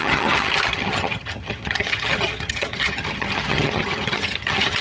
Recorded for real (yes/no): no